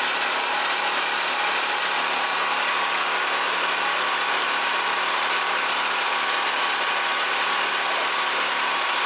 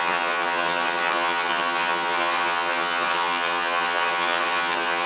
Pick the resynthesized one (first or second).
second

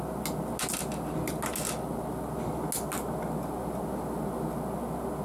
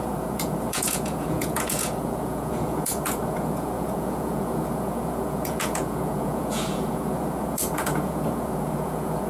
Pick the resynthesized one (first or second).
second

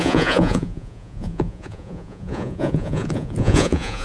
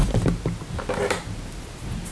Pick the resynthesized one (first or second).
first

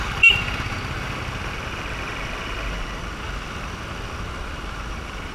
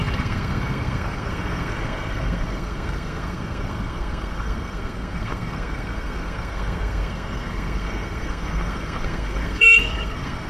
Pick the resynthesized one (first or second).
second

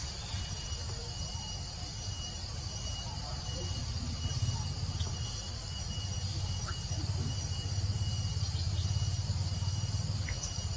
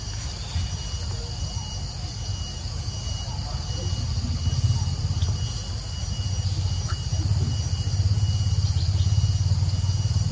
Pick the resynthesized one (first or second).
first